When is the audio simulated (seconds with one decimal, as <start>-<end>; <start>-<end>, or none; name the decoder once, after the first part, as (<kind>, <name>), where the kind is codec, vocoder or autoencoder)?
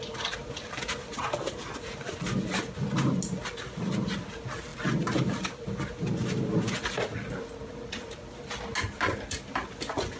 none